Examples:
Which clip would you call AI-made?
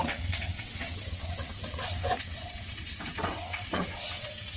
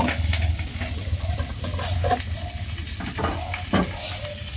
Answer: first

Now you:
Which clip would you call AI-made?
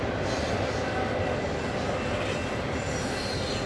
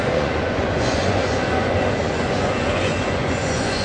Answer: second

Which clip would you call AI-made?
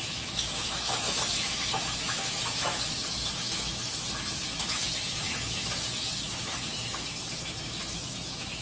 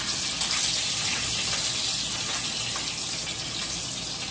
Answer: first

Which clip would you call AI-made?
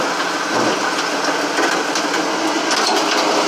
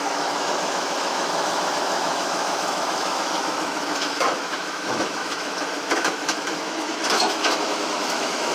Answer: second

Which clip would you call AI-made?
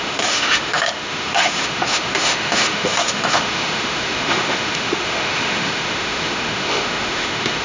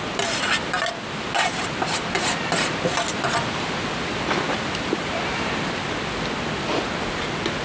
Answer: first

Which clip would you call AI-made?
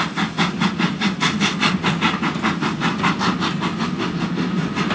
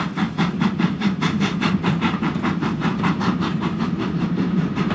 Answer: second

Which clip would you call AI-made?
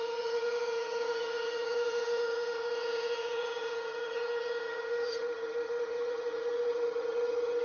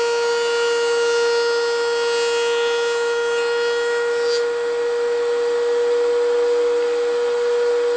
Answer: first